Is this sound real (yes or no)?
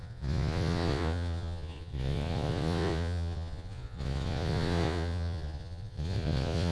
no